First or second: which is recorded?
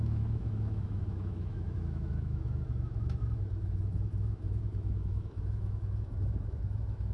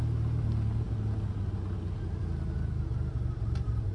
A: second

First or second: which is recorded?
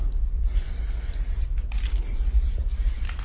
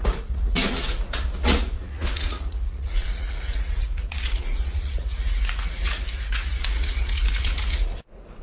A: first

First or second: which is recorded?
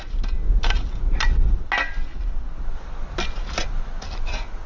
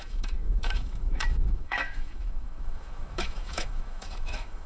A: first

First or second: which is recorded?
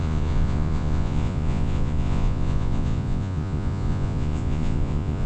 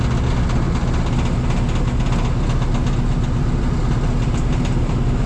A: second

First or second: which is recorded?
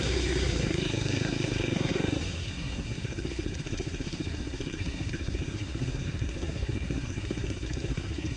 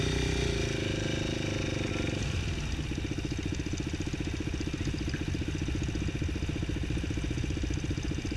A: second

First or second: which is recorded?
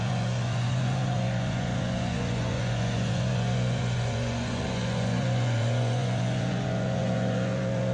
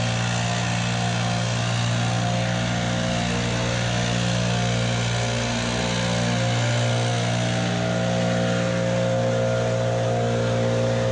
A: second